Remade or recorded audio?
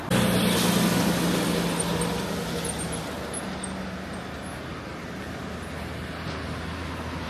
recorded